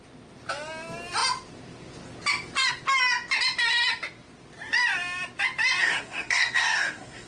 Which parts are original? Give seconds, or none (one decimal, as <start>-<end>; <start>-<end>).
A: 0.0-5.8